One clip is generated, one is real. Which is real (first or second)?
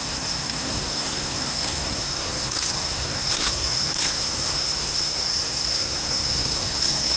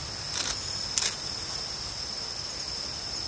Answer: second